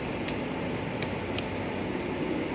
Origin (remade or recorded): recorded